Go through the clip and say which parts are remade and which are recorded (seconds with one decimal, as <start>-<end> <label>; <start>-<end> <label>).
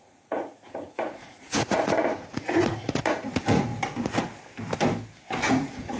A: 0.0-3.7 remade; 3.7-5.5 recorded; 5.5-6.0 remade